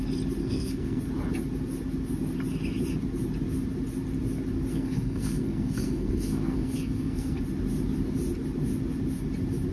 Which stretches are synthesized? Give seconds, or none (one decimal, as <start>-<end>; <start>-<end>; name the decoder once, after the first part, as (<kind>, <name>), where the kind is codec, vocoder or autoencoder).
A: 0.4-1.0 (codec, SNAC); 4.7-7.4